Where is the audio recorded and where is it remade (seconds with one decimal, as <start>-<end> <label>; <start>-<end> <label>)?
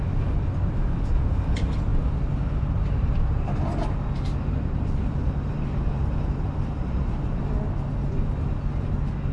0.0-5.2 recorded; 5.2-7.4 remade; 7.4-9.3 recorded